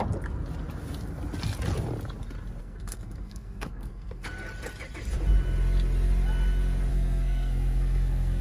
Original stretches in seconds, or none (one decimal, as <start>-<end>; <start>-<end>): 0.0-2.6; 4.3-6.9